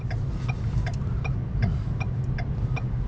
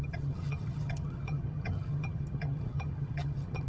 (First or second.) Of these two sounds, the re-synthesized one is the second